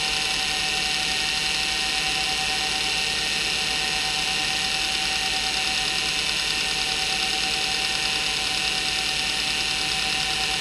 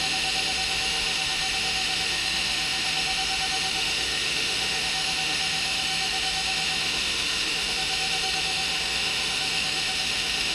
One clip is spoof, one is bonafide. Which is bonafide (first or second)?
first